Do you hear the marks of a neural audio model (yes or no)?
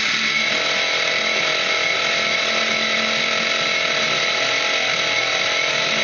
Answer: no